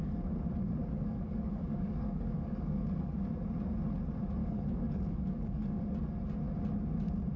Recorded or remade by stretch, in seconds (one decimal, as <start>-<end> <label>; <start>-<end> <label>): 0.0-0.8 recorded; 0.8-3.1 remade; 3.1-4.4 recorded; 4.4-5.8 remade; 5.8-7.4 recorded